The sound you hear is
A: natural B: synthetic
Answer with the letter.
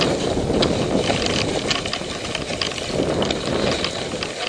A